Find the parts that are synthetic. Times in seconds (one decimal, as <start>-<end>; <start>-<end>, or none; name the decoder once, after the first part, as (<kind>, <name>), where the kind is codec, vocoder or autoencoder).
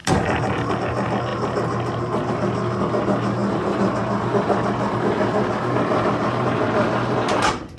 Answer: 0.0-0.7 (vocoder, BigVGAN v2); 3.4-4.0